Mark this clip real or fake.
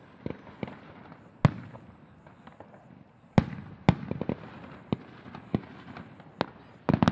real